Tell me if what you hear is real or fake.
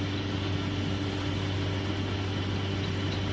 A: real